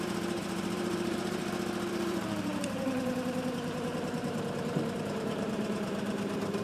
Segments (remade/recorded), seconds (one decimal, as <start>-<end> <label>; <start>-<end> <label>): 0.0-1.4 remade; 1.4-1.9 recorded; 1.9-6.6 remade